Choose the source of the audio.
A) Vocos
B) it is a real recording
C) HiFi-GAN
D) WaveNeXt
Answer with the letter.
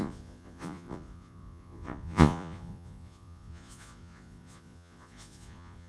A